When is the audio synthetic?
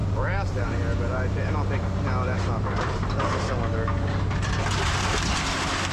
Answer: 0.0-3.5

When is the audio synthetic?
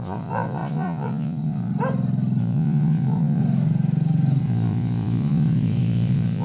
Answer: 0.0-1.7; 2.4-3.4; 4.4-6.4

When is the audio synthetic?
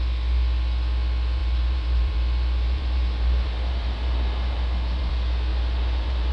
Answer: 1.4-5.1; 5.5-6.3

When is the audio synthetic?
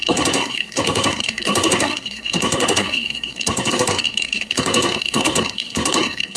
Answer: 0.0-6.4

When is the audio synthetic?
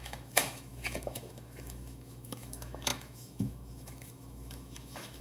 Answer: 0.0-5.2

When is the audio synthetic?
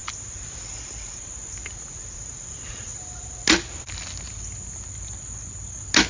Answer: none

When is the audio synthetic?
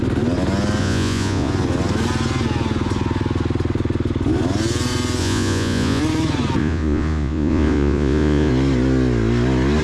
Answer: 0.8-1.5; 5.2-6.0; 6.6-8.5